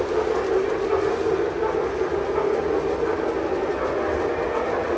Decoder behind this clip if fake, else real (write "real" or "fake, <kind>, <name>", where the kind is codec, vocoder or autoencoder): real